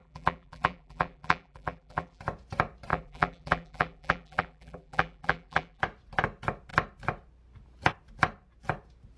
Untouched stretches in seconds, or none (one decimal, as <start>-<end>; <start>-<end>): 2.2-2.9; 5.8-9.2